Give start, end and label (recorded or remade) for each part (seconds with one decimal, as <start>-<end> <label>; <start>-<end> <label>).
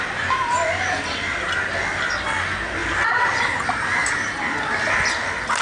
0.0-5.6 recorded